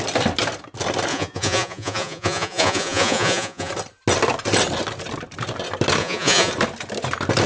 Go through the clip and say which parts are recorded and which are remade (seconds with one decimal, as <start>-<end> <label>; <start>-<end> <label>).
0.0-1.1 recorded; 1.1-3.7 remade; 3.7-6.0 recorded; 6.0-6.5 remade; 6.5-7.5 recorded